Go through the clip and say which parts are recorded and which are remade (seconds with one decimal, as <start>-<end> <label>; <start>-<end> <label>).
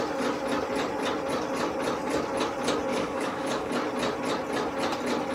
0.0-2.9 recorded; 2.9-3.7 remade; 3.7-5.3 recorded